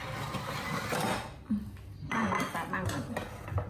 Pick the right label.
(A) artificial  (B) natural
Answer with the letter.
B